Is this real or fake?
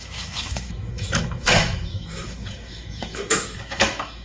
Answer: fake